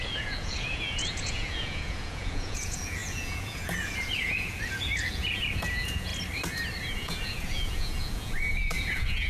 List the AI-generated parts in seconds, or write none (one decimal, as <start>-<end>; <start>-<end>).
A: 0.0-6.1; 6.9-9.3